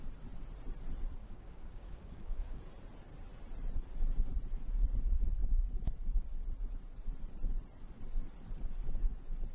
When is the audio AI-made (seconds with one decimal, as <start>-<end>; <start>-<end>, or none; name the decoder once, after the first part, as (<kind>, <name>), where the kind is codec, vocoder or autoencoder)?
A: 1.2-2.6 (codec, DAC)